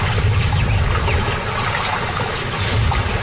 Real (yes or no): yes